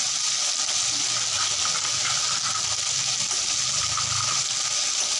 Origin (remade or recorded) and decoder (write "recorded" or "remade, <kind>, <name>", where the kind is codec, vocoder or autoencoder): recorded